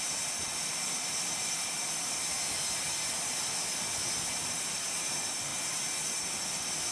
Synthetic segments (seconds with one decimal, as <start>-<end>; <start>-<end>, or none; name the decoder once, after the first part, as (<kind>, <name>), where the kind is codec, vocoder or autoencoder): none